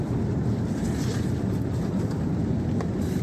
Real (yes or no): yes